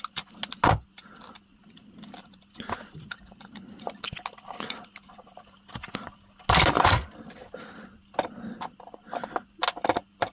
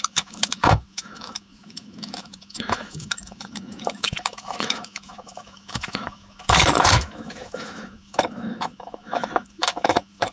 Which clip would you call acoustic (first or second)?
first